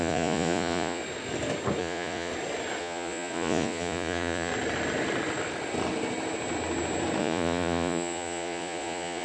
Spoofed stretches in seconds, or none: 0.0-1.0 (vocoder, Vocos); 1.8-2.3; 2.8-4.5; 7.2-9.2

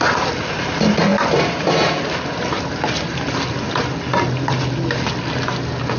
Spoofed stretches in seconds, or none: none

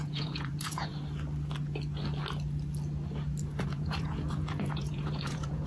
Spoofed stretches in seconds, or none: 0.0-0.9 (vocoder, Vocos); 3.6-5.7

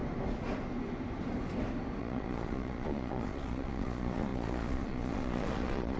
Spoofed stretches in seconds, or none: 2.0-6.0 (vocoder, Vocos)

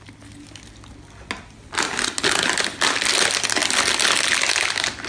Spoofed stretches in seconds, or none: none

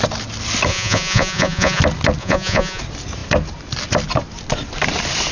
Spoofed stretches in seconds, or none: 0.7-1.8 (vocoder, Vocos); 2.2-2.8